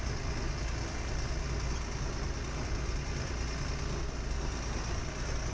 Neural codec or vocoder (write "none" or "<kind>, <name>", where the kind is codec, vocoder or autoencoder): none